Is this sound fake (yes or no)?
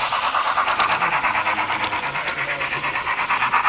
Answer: no